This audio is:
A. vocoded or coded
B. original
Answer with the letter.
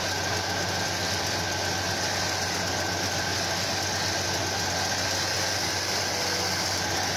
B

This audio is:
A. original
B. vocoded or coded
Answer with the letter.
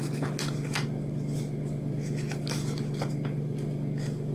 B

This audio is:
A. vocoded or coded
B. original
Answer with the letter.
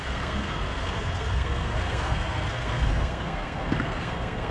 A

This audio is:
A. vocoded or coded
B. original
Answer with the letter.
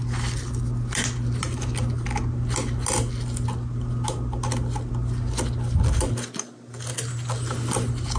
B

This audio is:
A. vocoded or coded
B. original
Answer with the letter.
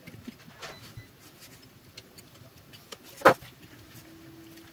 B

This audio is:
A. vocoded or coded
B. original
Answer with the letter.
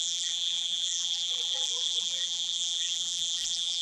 A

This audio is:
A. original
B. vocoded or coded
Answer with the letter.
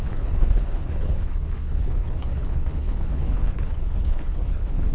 B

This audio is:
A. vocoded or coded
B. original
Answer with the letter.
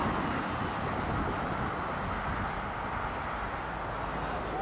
B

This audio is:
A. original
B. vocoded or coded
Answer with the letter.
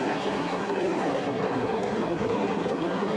B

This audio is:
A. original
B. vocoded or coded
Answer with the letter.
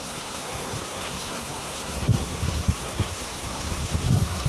B